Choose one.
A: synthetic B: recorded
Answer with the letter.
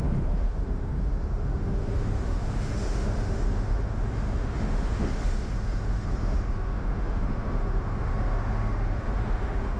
A